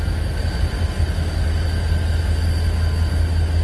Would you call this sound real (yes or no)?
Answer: yes